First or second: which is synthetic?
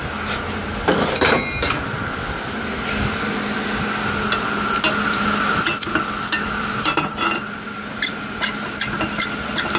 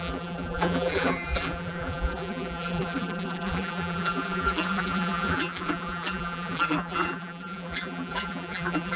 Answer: second